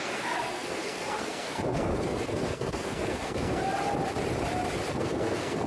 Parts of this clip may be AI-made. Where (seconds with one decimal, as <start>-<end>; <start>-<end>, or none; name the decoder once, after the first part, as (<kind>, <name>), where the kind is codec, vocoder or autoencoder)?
0.0-3.6 (codec, SNAC); 4.9-5.7